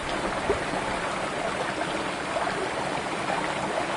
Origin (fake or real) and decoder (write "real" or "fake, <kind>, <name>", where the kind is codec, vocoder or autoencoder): real